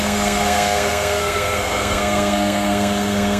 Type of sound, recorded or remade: remade